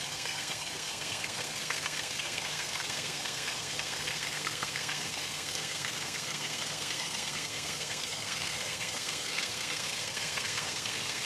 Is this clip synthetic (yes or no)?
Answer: yes